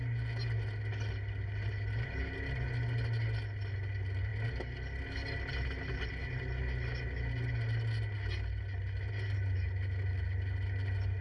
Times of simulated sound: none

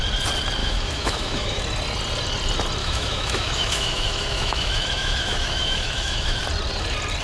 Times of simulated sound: 0.6-1.6; 2.8-6.4

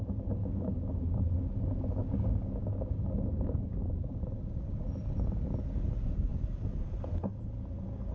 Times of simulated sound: 0.4-1.0; 2.0-4.2

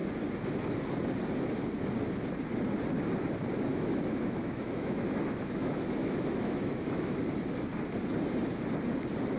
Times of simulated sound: 3.7-7.2

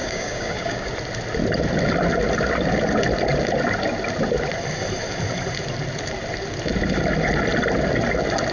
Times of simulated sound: 0.0-0.9

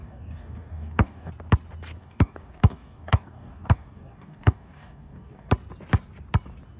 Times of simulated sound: 0.0-1.3; 2.0-5.5